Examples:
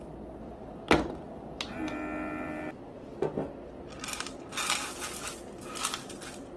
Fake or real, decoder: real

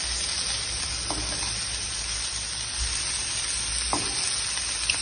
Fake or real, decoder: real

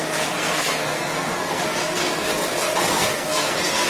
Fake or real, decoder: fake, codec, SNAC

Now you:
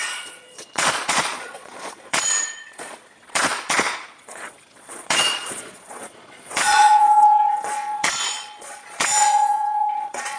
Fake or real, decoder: fake, vocoder, Vocos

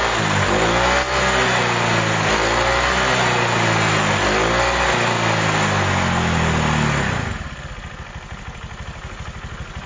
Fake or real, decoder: real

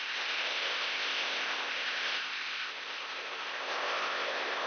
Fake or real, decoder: fake, codec, ZipCodec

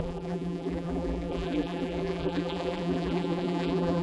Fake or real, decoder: fake, vocoder, BigVGAN v2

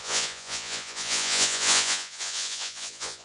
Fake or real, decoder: fake, vocoder, Vocos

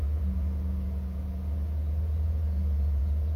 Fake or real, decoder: fake, vocoder, Vocos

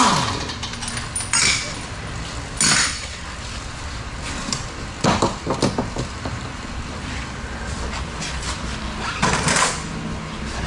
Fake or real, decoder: real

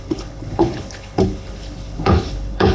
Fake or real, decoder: fake, codec, HILCodec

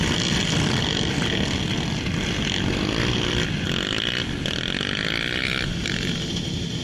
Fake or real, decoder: real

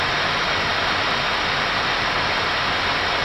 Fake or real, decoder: real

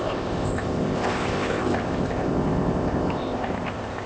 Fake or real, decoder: fake, codec, ZipCodec